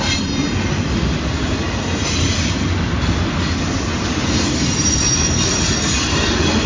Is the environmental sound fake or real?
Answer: real